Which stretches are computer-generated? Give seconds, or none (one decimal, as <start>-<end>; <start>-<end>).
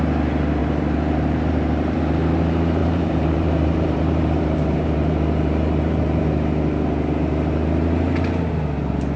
0.6-2.0; 2.8-6.2